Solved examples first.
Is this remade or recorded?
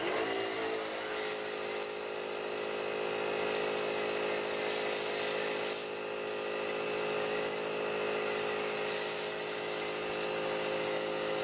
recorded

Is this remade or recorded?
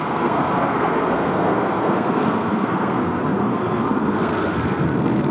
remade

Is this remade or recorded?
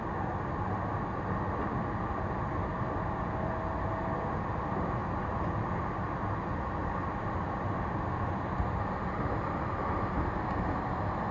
recorded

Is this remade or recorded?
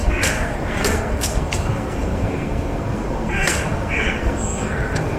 remade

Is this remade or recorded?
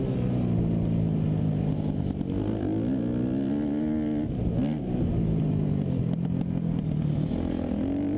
recorded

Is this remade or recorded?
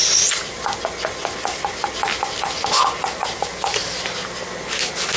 recorded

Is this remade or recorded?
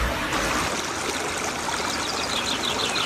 recorded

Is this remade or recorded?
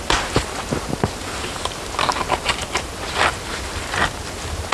recorded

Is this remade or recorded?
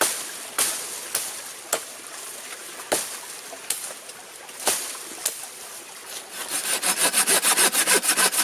recorded